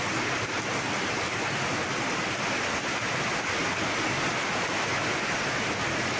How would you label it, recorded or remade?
recorded